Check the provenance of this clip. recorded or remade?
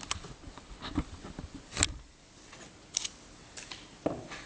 recorded